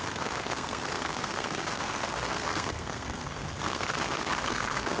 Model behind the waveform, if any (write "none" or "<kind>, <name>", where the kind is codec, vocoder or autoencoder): codec, SNAC